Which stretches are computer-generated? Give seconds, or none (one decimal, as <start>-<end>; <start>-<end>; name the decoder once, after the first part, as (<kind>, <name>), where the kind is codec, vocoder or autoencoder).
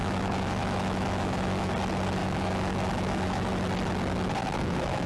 0.0-1.7 (autoencoder, DAC-VAE); 2.2-3.5; 4.4-5.1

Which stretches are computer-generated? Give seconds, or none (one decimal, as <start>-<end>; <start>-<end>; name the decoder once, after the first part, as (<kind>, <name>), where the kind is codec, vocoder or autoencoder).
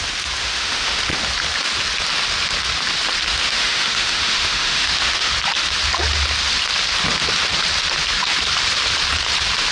0.4-1.0 (autoencoder, DAC-VAE); 3.3-5.3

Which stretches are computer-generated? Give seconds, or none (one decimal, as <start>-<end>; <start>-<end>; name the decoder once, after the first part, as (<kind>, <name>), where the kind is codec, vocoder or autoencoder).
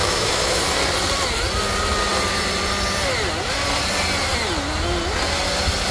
0.0-0.6 (autoencoder, DAC-VAE)